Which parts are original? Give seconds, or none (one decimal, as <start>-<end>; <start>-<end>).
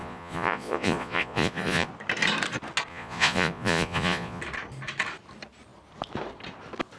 1.9-2.9; 4.4-7.0